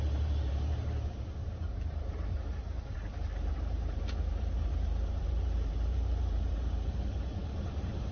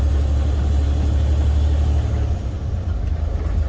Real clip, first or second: second